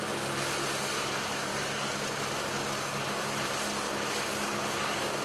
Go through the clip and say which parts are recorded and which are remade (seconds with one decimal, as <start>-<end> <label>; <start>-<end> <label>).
0.0-5.2 recorded